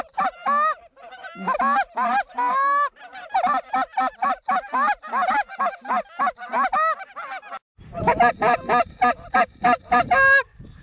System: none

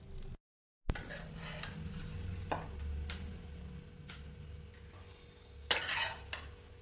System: none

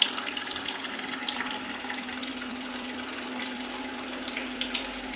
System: vocoder, BigVGAN v2